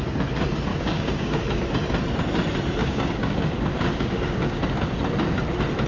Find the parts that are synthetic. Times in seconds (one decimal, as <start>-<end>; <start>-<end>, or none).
0.7-1.4; 2.8-4.6